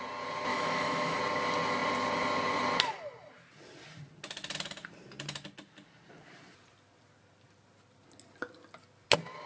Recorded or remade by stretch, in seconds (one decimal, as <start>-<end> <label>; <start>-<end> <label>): 0.0-0.5 recorded; 0.5-1.2 remade; 1.2-9.5 recorded